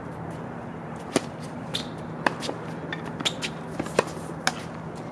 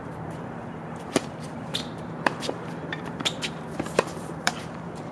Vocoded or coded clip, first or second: second